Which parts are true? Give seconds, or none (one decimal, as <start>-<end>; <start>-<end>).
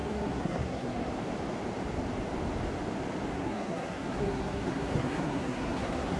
1.1-3.3